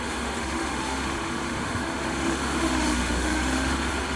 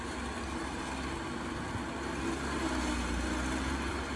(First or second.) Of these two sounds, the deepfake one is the first